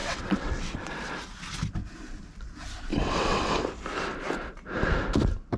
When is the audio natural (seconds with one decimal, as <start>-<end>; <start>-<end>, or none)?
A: 0.9-2.9; 3.5-5.6